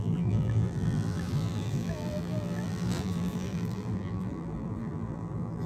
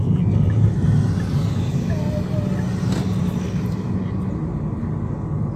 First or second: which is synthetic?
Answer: first